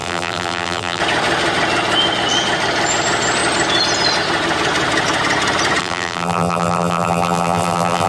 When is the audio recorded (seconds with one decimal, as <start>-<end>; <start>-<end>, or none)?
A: 1.0-5.8